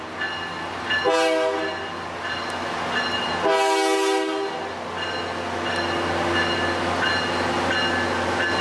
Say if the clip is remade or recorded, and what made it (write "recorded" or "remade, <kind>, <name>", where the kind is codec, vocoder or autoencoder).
recorded